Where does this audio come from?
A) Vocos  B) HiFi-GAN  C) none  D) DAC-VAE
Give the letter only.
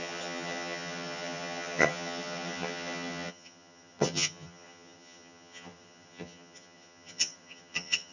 B